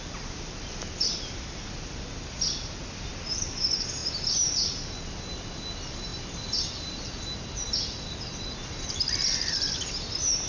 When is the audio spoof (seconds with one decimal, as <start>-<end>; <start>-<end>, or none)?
none